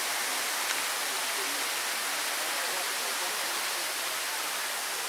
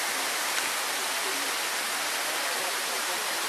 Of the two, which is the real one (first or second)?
first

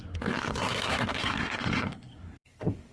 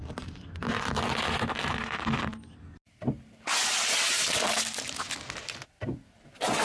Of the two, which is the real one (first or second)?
second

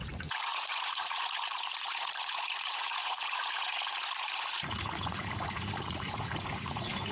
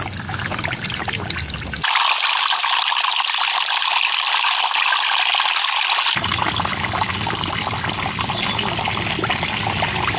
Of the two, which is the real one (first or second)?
second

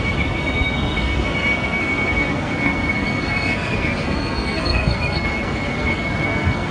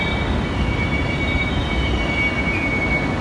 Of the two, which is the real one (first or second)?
second